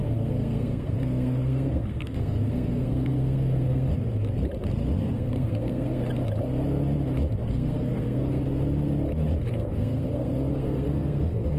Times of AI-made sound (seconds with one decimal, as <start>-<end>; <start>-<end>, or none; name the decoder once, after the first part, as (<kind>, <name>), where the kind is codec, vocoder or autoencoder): 0.0-3.9 (codec, SNAC); 5.0-6.0; 7.5-8.4; 9.5-11.6